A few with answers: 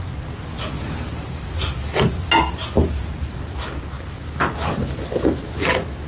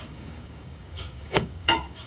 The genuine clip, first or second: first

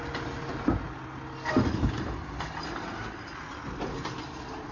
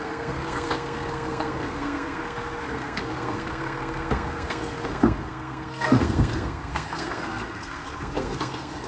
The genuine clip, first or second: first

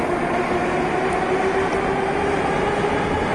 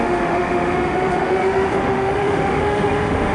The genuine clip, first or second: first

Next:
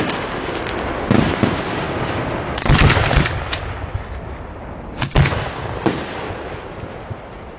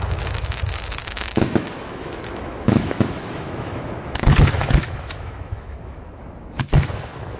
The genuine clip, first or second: first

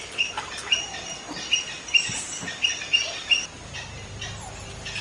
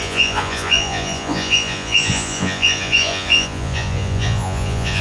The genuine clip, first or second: first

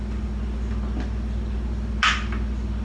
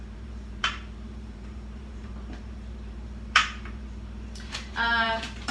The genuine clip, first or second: first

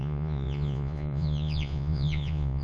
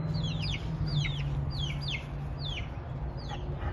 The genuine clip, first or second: second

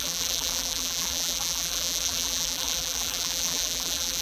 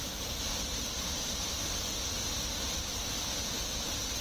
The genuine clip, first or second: second